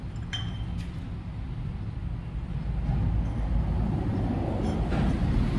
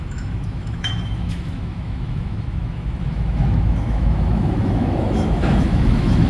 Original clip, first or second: first